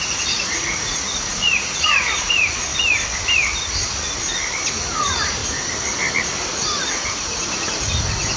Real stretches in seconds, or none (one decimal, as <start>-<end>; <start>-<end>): 2.7-4.7; 5.4-6.8